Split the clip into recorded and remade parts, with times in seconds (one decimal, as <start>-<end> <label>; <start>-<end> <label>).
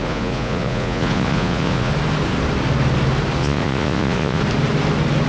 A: 0.0-1.9 remade; 1.9-3.4 recorded; 3.4-4.4 remade; 4.4-5.3 recorded